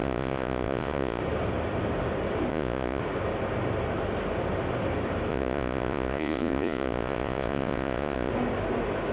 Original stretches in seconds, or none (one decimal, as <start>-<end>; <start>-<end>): 1.2-2.5; 3.0-5.3; 8.3-9.1